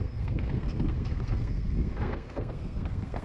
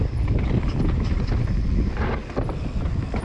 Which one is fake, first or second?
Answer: first